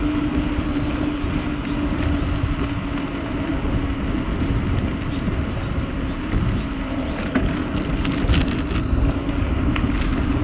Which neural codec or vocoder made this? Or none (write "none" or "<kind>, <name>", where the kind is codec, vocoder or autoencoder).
none